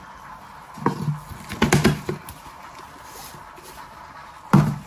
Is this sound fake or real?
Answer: real